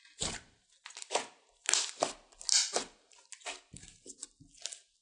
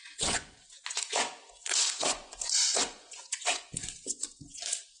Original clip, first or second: first